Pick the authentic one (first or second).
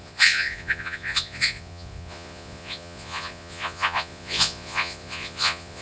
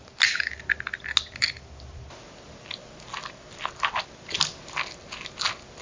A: second